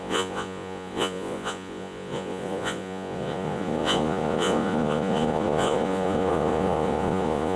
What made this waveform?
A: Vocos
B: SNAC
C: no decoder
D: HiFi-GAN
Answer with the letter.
A